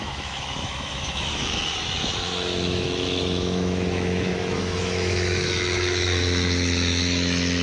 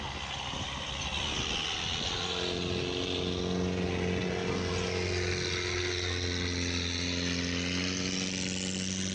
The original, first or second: second